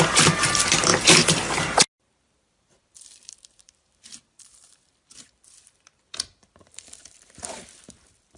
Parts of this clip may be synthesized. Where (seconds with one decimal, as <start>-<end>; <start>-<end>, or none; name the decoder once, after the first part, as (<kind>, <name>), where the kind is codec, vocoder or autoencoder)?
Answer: 0.0-0.9 (vocoder, BigVGAN v2); 2.2-8.4